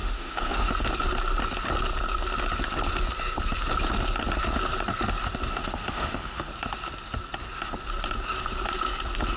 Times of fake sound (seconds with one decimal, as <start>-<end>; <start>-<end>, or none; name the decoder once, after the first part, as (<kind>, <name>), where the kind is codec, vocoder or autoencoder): 0.0-0.7 (autoencoder, DAC-VAE); 5.5-6.5